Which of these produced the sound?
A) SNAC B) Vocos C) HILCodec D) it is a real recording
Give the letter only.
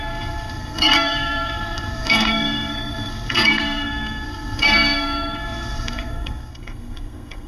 A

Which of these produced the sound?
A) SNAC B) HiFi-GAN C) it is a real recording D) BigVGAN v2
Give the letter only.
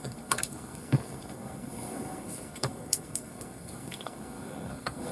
A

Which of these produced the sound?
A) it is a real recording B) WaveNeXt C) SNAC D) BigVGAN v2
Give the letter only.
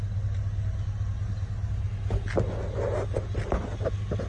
A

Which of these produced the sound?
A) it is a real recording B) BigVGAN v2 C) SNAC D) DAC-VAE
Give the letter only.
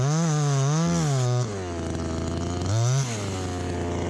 A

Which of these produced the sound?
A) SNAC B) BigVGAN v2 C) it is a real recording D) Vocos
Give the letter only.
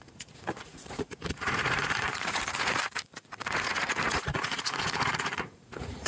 D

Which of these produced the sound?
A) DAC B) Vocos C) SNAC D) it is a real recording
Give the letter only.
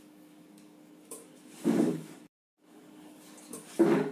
A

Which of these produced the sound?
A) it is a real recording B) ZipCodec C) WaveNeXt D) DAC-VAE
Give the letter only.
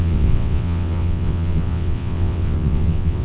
C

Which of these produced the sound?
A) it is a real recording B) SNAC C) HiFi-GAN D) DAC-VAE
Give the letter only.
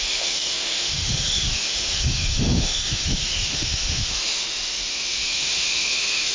D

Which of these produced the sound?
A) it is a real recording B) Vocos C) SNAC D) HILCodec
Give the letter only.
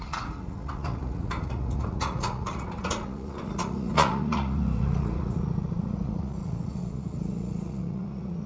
B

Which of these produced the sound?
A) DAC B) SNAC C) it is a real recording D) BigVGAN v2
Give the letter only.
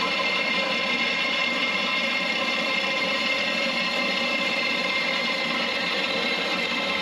D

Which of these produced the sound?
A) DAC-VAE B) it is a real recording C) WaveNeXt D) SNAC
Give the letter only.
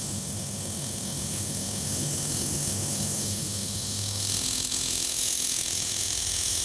A